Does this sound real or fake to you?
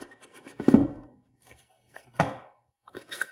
fake